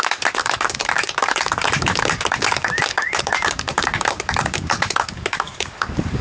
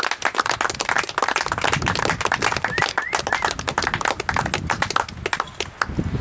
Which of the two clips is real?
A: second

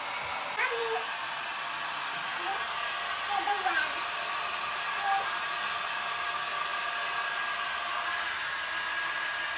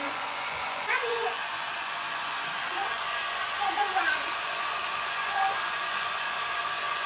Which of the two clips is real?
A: first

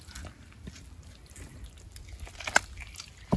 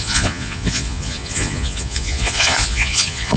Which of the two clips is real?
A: first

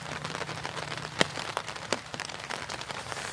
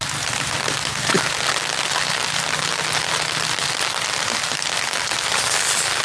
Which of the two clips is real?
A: second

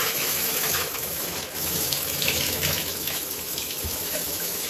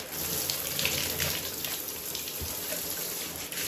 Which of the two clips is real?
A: second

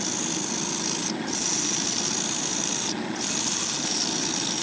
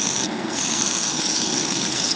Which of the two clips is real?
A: first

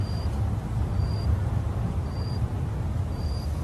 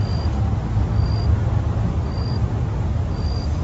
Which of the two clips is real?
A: second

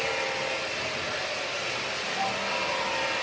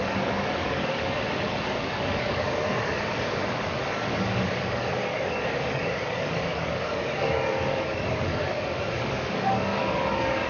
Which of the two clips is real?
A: first